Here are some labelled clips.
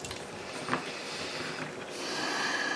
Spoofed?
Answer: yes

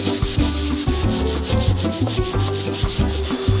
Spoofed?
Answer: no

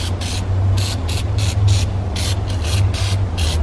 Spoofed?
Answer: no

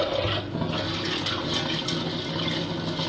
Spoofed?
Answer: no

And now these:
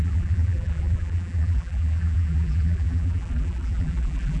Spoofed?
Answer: yes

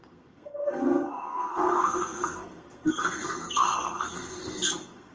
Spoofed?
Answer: yes